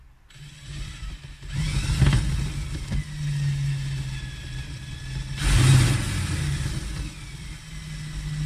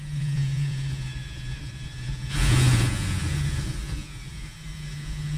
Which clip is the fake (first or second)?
second